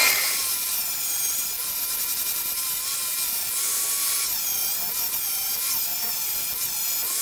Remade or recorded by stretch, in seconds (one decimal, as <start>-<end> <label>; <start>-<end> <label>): 0.0-1.5 remade; 1.5-7.2 recorded